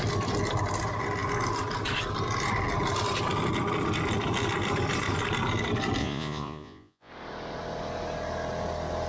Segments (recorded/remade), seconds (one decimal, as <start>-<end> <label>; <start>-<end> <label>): 0.0-6.0 recorded; 6.0-7.1 remade; 7.1-9.1 recorded